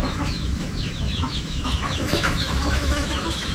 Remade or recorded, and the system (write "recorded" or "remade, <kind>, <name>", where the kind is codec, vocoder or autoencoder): remade, autoencoder, DAC-VAE